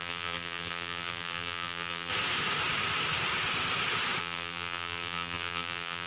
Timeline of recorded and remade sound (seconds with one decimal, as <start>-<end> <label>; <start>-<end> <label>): 0.0-2.1 remade; 2.1-4.2 recorded; 4.2-6.1 remade